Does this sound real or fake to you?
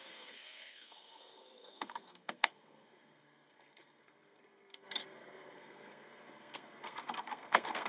fake